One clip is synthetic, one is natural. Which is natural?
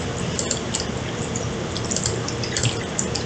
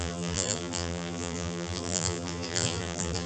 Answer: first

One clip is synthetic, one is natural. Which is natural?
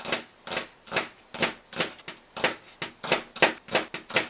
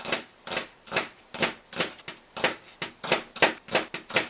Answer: first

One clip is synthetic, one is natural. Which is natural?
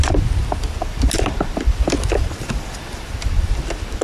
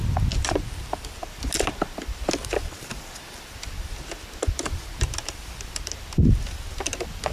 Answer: second